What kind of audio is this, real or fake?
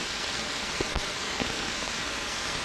fake